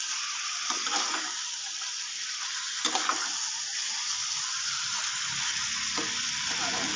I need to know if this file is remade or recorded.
recorded